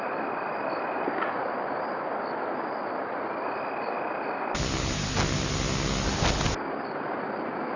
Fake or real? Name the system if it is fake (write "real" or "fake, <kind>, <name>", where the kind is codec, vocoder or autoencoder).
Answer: real